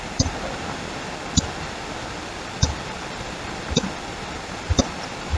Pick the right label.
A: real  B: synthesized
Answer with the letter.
A